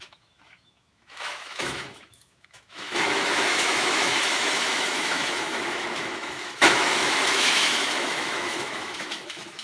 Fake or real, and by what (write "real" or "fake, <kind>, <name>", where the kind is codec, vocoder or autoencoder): fake, autoencoder, DAC-VAE